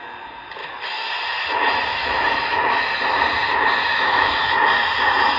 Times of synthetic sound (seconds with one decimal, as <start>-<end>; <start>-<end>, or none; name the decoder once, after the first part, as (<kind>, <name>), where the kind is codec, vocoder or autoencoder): 0.6-1.1 (autoencoder, DAC-VAE); 1.9-2.8; 3.9-4.5